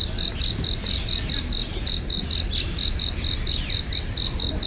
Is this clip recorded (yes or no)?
yes